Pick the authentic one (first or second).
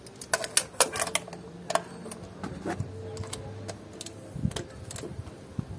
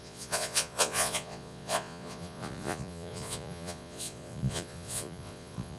first